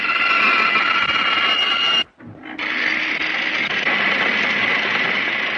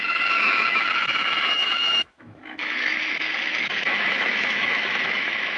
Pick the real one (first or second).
first